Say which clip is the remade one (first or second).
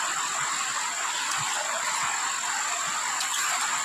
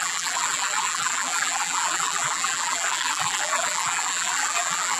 second